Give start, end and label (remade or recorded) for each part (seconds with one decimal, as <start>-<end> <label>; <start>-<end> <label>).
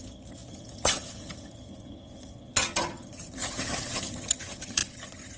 0.0-5.4 remade